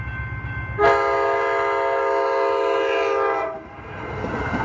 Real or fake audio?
real